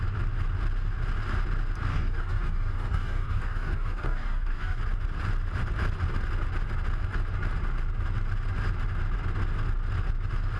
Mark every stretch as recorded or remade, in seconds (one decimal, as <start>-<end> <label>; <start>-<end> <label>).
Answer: 0.0-1.9 recorded; 1.9-4.8 remade; 4.8-10.6 recorded

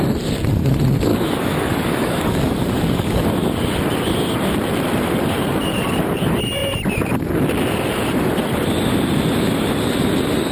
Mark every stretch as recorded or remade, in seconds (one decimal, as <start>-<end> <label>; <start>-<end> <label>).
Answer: 0.0-1.1 recorded; 1.1-3.3 remade; 3.3-10.5 recorded

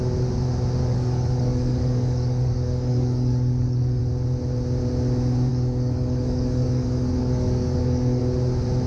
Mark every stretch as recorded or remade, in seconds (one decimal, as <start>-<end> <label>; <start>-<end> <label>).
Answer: 0.0-0.8 recorded; 0.8-4.0 remade; 4.0-5.5 recorded; 5.5-8.2 remade; 8.2-8.9 recorded

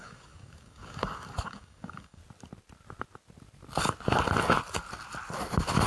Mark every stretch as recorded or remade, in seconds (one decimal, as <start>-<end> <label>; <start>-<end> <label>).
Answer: 0.0-2.2 remade; 2.2-5.9 recorded

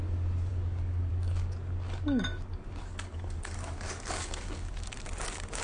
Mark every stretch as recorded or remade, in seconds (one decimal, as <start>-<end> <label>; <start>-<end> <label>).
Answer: 0.0-5.6 remade

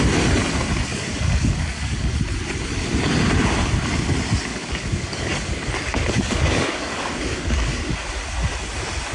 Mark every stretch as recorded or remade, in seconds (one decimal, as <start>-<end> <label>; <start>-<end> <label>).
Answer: 0.0-0.9 recorded; 0.9-2.2 remade; 2.2-4.5 recorded; 4.5-8.1 remade; 8.1-9.1 recorded

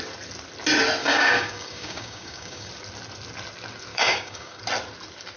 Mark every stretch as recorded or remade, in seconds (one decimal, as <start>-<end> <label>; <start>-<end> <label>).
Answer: 0.0-1.0 recorded; 1.0-2.7 remade; 2.7-3.9 recorded; 3.9-4.6 remade; 4.6-5.4 recorded